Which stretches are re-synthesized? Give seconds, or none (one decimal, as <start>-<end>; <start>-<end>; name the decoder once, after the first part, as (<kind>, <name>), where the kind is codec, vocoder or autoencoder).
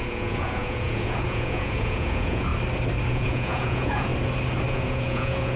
0.0-2.5 (vocoder, Vocos); 3.1-4.1; 4.7-5.6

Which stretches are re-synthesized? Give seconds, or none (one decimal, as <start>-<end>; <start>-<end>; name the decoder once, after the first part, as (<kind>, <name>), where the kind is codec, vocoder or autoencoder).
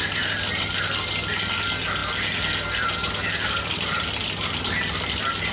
none